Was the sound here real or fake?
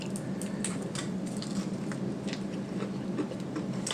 real